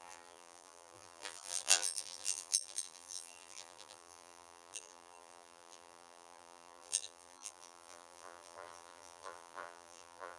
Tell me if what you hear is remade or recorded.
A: remade